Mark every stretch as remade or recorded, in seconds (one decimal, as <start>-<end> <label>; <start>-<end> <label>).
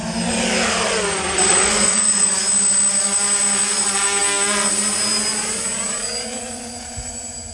0.0-1.5 recorded; 1.5-2.3 remade; 2.3-7.5 recorded